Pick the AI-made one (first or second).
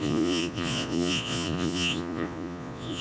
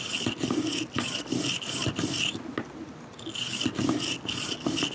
first